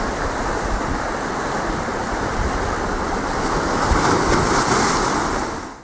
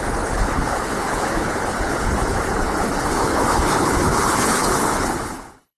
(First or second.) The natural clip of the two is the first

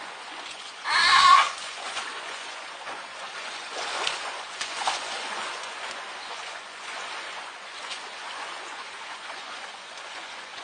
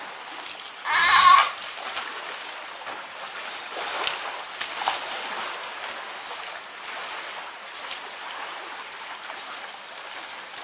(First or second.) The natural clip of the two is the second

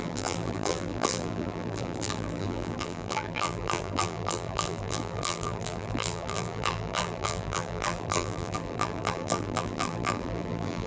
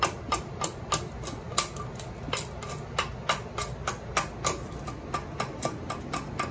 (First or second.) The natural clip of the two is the second